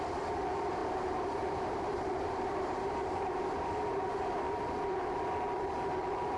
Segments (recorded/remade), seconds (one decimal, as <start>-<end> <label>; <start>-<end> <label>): 0.0-0.8 recorded; 0.8-4.6 remade; 4.6-6.4 recorded